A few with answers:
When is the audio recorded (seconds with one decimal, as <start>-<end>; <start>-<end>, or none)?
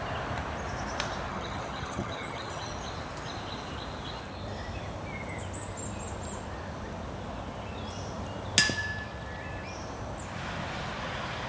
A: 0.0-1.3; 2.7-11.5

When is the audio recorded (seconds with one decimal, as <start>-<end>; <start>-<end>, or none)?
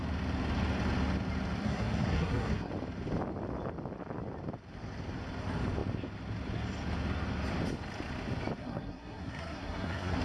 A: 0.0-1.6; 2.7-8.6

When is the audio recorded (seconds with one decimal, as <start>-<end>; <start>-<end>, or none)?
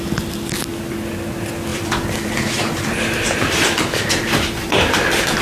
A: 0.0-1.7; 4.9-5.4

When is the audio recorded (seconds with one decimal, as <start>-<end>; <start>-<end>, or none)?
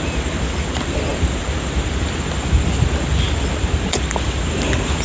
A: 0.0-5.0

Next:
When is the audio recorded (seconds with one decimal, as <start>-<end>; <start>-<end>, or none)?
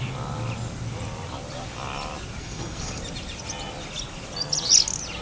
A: 0.0-2.4; 3.0-5.2